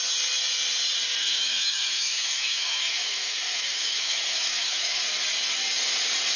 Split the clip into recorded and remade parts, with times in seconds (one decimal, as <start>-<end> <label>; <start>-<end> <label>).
0.0-1.2 recorded; 1.2-5.0 remade; 5.0-6.4 recorded